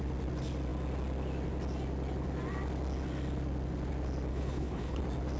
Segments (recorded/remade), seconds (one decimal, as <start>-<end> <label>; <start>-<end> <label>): 0.0-4.3 recorded; 4.3-5.0 remade; 5.0-5.4 recorded